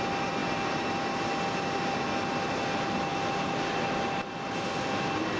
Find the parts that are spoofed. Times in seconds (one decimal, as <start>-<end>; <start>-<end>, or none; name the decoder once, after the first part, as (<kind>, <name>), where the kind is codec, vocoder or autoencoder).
none